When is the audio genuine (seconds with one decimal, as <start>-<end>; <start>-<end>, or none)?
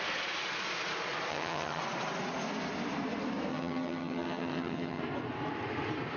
0.0-1.3; 1.8-3.5; 5.0-6.2